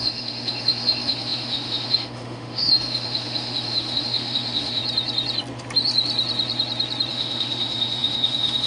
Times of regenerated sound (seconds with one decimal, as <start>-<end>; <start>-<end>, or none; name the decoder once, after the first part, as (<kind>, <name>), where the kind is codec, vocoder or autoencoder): 0.0-4.8 (autoencoder, DAC-VAE); 7.1-8.7